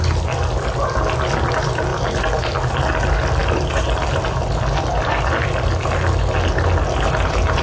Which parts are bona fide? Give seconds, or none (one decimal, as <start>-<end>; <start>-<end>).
0.0-7.6